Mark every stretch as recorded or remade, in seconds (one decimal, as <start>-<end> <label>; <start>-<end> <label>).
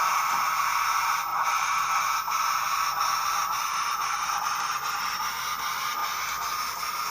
0.0-1.3 recorded; 1.3-2.0 remade; 2.0-3.7 recorded; 3.7-5.2 remade; 5.2-7.1 recorded